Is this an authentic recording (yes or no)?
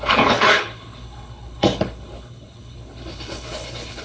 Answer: no